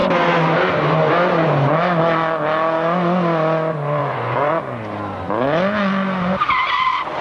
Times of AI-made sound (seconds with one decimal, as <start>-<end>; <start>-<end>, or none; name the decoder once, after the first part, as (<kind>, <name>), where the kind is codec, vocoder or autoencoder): 4.0-4.5 (vocoder, Vocos)